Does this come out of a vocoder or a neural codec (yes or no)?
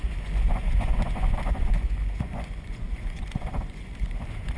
yes